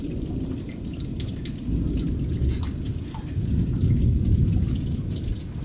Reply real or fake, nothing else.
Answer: real